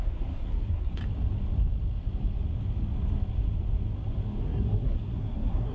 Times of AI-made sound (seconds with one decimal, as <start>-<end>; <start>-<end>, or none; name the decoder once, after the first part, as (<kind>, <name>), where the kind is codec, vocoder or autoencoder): 0.0-1.0 (codec, SNAC); 4.4-5.7